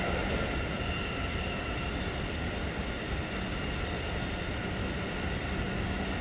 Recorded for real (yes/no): yes